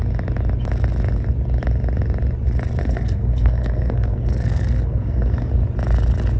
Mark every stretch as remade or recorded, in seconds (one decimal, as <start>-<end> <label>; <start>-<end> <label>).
0.0-2.8 recorded; 2.8-5.5 remade; 5.5-6.4 recorded